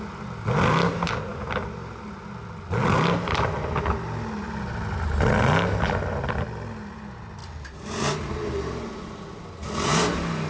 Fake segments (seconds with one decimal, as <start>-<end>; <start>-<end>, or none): none